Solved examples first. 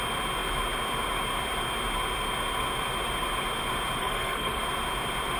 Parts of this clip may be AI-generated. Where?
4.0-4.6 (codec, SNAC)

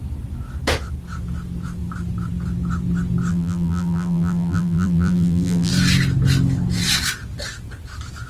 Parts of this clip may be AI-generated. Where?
3.3-5.7 (vocoder, BigVGAN v2)

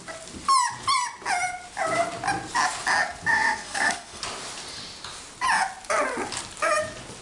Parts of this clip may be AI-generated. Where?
3.3-4.2 (codec, SNAC)